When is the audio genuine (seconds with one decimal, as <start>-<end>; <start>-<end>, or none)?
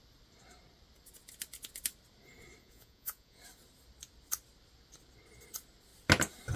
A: 0.0-2.6; 3.4-6.6